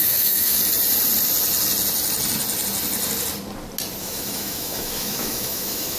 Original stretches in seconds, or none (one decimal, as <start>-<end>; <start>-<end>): 0.6-4.0